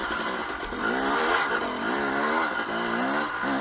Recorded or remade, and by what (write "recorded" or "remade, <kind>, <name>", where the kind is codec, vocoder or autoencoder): recorded